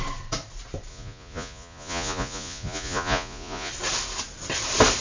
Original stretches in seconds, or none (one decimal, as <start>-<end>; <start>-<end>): 0.0-0.9; 3.7-5.0